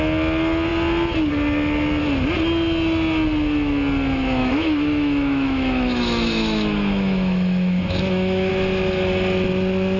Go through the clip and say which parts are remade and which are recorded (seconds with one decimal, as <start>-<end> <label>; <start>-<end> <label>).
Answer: 0.0-4.4 recorded; 4.4-8.5 remade; 8.5-10.0 recorded